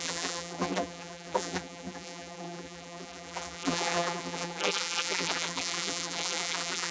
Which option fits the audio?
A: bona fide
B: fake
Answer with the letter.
B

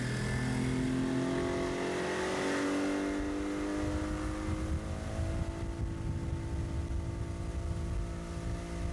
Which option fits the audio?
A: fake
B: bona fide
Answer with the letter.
B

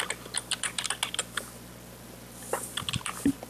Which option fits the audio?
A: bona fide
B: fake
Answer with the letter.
A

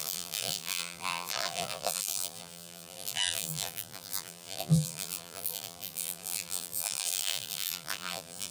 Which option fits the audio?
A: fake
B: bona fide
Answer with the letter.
A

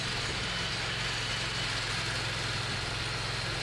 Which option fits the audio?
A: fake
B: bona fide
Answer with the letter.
B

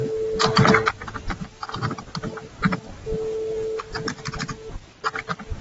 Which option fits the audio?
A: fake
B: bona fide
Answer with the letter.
B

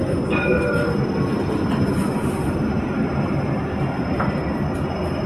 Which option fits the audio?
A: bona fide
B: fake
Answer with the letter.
A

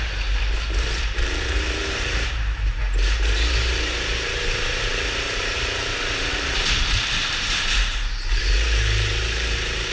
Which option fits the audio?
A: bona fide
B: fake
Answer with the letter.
B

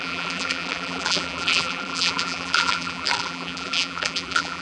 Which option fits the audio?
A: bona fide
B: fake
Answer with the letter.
B